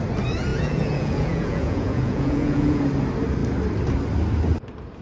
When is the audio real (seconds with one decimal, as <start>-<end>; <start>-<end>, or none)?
0.0-0.5; 2.8-5.0